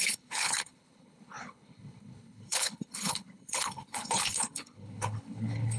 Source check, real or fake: fake